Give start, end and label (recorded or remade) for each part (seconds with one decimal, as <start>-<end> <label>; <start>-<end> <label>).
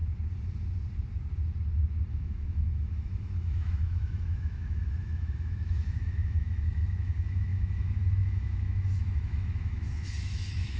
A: 0.0-2.1 recorded; 2.1-10.8 remade